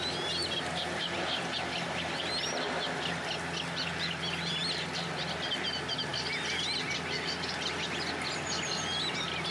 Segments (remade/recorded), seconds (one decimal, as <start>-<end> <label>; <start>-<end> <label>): 0.0-9.5 recorded